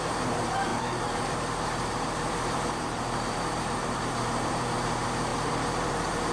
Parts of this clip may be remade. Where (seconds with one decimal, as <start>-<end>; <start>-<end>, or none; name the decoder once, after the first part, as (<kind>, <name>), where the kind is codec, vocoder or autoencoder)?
0.0-6.3 (vocoder, BigVGAN v2)